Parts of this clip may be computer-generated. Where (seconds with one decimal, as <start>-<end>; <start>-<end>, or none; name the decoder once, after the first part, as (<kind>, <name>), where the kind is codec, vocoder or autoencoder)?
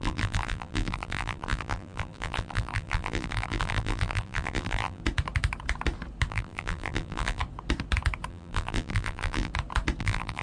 0.0-5.0 (vocoder, BigVGAN v2); 6.3-7.4; 8.3-9.5; 10.0-10.4